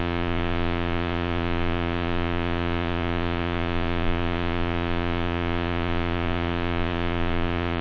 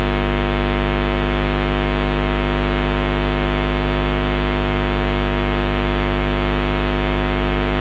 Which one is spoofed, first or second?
first